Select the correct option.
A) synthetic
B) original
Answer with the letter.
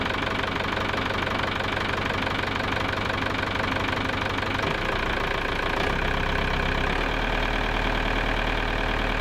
B